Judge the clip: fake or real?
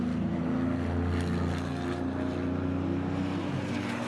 real